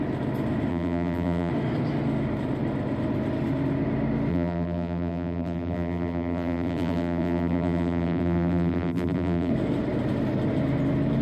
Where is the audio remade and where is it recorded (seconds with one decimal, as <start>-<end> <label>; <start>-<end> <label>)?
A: 0.0-0.7 recorded; 0.7-1.5 remade; 1.5-4.3 recorded; 4.3-9.5 remade; 9.5-11.2 recorded